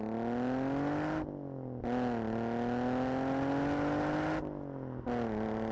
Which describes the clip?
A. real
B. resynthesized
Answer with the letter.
A